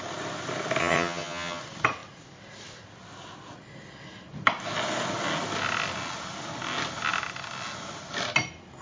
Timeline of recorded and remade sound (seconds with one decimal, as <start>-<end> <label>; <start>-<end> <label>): 0.0-0.8 recorded; 0.8-1.6 remade; 1.6-8.8 recorded